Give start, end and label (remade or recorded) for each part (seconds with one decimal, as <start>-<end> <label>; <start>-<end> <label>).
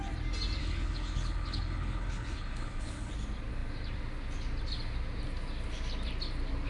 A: 0.0-0.6 recorded; 0.6-3.1 remade; 3.1-6.7 recorded